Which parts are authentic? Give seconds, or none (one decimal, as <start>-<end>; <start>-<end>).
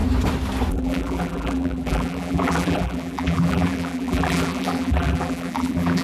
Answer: 0.0-0.7